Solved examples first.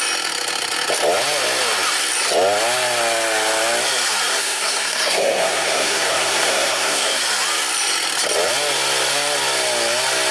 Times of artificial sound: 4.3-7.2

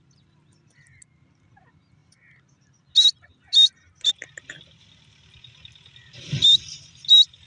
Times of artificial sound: none

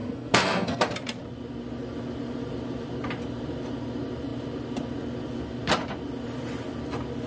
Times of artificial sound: 0.0-0.8